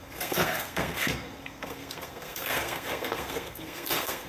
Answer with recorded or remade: remade